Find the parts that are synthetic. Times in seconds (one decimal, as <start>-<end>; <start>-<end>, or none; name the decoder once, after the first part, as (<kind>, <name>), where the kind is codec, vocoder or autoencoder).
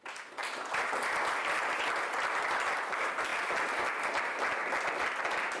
none